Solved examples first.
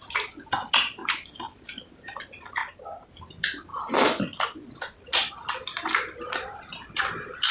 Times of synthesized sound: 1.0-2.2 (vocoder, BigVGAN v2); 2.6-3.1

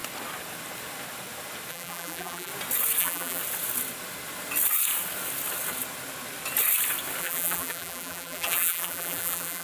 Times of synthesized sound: 1.7-2.5 (vocoder, BigVGAN v2); 3.0-3.4; 7.2-9.6

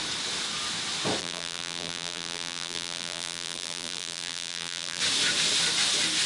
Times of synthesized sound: 1.2-5.0 (vocoder, BigVGAN v2)

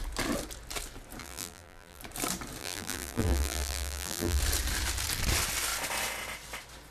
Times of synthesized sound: 1.2-2.0 (vocoder, BigVGAN v2); 2.6-4.4

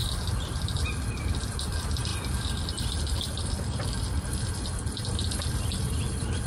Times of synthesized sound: 1.1-2.1 (vocoder, BigVGAN v2); 4.0-6.5

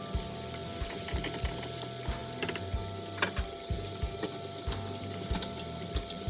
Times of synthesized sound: none

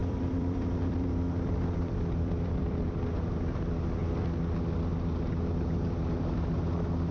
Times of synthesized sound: 0.0-2.8 (vocoder, BigVGAN v2)